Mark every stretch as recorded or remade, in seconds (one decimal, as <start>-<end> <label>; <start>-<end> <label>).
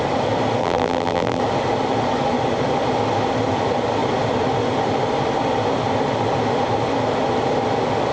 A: 0.0-0.6 recorded; 0.6-1.4 remade; 1.4-8.1 recorded